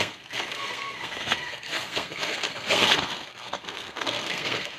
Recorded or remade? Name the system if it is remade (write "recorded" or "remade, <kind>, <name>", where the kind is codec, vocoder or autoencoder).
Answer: remade, codec, SNAC